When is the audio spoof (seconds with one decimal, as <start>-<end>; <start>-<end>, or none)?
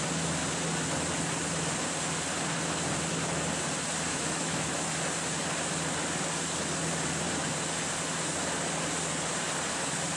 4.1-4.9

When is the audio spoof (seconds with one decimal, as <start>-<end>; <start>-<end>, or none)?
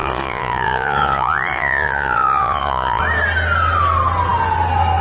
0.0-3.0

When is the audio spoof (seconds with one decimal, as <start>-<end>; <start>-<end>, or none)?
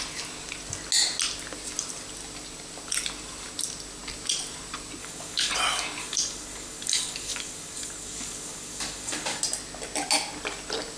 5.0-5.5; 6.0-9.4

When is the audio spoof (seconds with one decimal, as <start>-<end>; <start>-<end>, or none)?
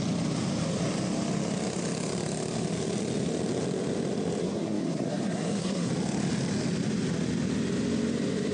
4.4-5.9